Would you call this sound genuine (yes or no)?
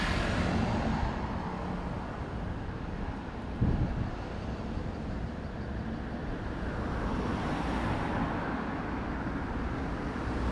yes